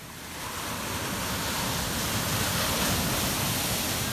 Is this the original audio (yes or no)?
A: yes